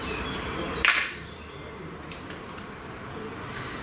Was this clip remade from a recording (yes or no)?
yes